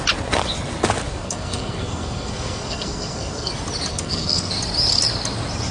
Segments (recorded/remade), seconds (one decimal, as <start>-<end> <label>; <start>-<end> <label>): 0.0-1.1 recorded; 1.1-3.5 remade; 3.5-3.9 recorded; 3.9-4.5 remade; 4.5-5.7 recorded